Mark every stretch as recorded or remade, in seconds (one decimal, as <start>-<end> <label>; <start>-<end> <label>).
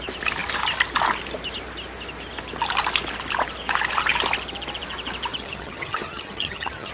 0.0-5.3 recorded; 5.3-6.9 remade